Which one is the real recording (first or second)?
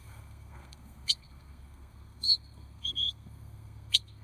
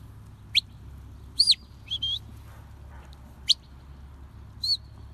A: second